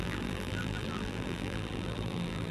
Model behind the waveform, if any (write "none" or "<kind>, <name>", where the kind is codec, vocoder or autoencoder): vocoder, BigVGAN v2